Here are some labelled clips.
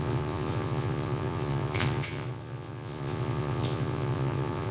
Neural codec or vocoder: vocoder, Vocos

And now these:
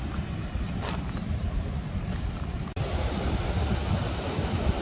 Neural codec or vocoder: none